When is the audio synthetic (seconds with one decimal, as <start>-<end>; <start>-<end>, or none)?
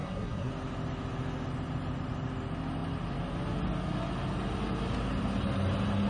0.0-0.5